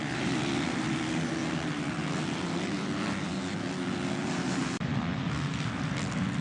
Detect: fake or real real